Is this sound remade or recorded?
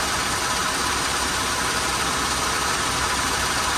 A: recorded